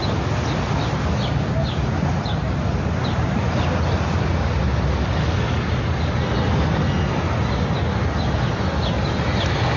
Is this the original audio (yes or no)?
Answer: yes